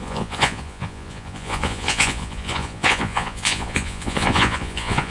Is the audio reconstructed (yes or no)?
yes